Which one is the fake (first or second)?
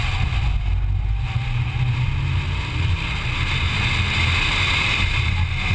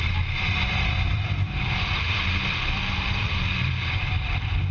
second